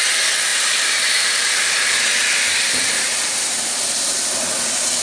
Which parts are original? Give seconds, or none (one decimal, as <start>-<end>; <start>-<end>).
0.0-0.5; 3.5-5.0